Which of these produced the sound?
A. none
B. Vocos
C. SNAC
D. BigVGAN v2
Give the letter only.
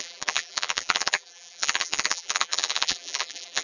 D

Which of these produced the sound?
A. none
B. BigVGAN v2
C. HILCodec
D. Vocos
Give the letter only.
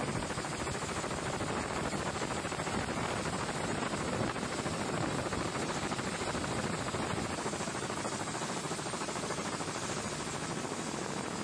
A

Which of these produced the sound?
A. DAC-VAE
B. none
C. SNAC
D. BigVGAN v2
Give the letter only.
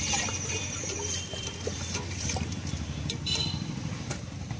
D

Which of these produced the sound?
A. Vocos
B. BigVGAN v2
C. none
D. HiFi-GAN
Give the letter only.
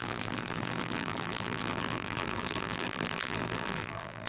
B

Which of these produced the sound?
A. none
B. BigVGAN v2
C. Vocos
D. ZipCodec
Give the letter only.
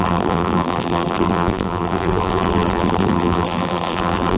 B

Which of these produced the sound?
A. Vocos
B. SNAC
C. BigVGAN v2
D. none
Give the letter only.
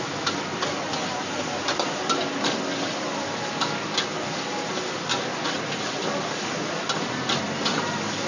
D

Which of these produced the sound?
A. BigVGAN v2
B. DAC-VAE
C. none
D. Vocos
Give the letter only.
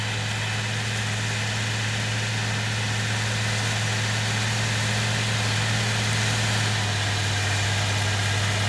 C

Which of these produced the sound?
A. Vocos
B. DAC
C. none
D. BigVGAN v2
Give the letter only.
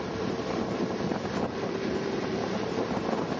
D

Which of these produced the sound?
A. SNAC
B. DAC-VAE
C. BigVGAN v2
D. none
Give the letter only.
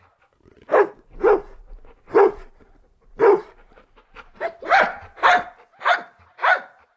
C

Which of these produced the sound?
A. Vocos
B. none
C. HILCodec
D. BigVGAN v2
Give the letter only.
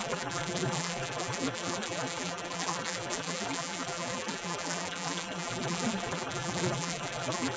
D